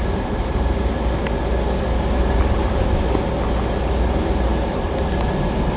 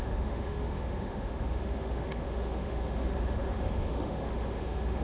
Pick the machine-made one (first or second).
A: second